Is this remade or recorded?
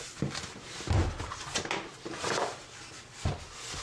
recorded